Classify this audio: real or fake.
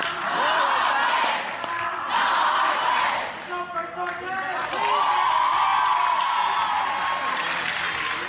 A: real